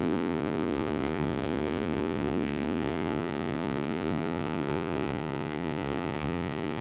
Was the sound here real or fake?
fake